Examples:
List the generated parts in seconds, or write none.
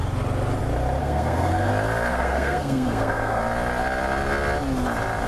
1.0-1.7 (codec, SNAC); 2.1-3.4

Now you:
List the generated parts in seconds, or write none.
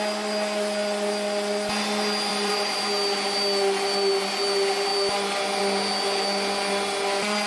2.3-2.8 (vocoder, BigVGAN v2)